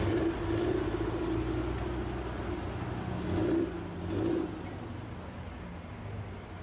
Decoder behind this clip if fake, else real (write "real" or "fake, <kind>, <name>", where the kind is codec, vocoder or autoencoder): real